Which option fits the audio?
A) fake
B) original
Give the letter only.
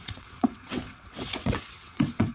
A